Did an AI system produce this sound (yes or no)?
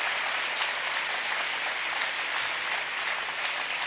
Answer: no